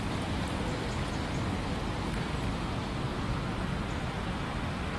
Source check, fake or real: real